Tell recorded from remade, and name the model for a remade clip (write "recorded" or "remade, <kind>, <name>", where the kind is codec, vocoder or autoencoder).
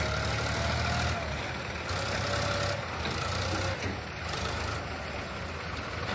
recorded